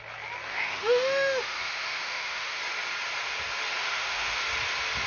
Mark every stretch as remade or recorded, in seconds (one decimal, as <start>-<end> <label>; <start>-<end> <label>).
0.0-0.5 recorded; 0.5-2.6 remade; 2.6-3.8 recorded; 3.8-4.4 remade; 4.4-5.1 recorded